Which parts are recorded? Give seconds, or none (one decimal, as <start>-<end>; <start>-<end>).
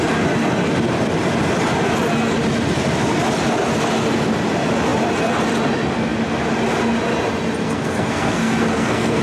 0.0-7.6